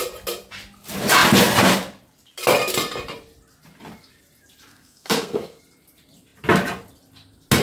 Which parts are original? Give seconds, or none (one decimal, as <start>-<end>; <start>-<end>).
0.0-4.7; 5.6-7.6